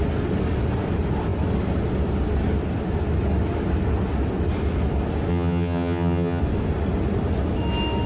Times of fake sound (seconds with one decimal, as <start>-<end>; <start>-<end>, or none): 5.3-6.4